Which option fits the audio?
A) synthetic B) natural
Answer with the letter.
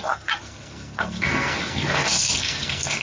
A